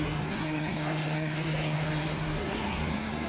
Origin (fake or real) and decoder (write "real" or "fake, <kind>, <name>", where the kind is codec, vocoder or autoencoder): fake, codec, SNAC